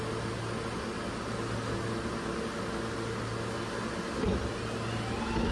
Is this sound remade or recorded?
recorded